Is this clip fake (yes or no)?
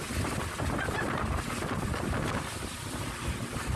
no